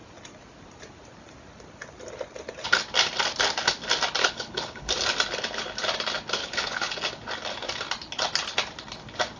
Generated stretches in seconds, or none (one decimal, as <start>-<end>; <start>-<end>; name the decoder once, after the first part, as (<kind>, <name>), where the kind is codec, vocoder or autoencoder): 4.2-4.9 (codec, HILCodec); 6.4-6.9